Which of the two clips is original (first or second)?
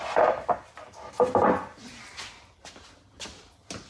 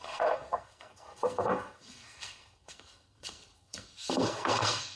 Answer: first